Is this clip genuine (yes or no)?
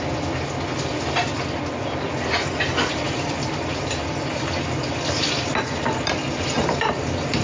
yes